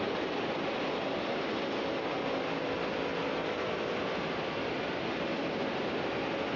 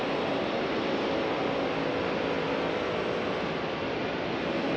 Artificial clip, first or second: first